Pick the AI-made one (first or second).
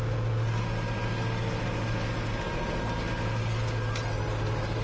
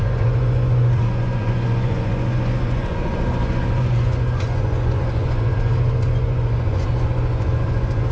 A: second